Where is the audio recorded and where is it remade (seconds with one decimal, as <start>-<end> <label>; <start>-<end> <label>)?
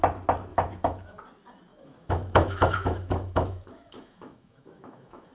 0.0-0.5 recorded; 0.5-1.2 remade; 1.2-1.7 recorded; 1.7-5.3 remade